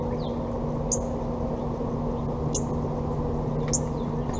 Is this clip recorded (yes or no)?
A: yes